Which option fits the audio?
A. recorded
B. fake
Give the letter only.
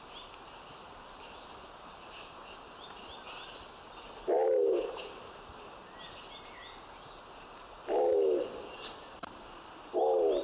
A